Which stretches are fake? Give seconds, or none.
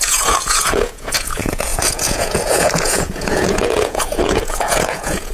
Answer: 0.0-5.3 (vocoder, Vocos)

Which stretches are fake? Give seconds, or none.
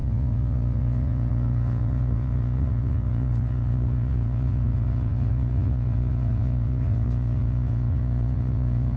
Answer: 0.0-9.0 (vocoder, Vocos)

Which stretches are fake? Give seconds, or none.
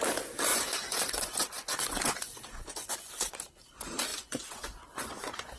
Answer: 0.5-3.4 (vocoder, Vocos); 4.1-5.6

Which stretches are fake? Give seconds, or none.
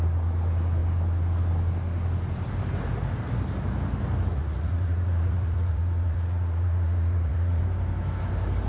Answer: 4.3-7.6 (vocoder, Vocos)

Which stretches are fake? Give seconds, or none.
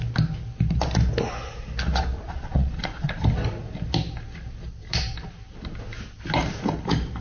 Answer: 2.1-3.1 (vocoder, Vocos)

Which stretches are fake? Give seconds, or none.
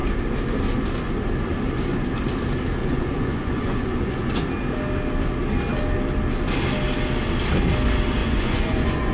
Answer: 2.8-4.3 (vocoder, Vocos); 8.2-9.1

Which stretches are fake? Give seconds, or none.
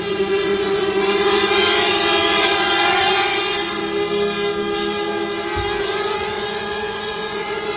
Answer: 0.0-3.8 (vocoder, Vocos); 5.8-7.8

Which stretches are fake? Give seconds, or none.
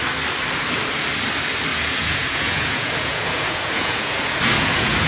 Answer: 1.7-5.1 (vocoder, Vocos)